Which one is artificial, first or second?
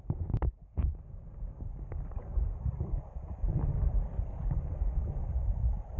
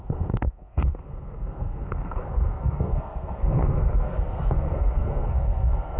second